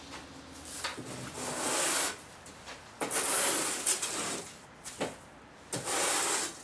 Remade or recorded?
recorded